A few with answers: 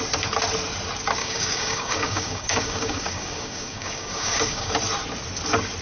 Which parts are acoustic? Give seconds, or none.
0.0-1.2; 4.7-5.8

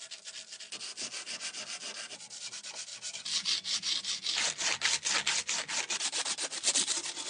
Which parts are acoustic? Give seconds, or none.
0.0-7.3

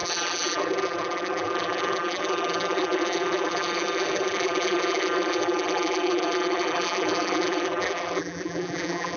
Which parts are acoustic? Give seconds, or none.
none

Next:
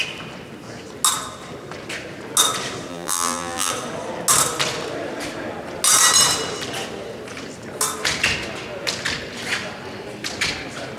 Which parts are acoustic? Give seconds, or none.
0.0-2.9; 3.7-11.0

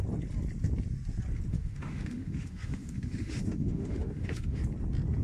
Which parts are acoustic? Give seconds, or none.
0.0-1.5; 4.6-5.2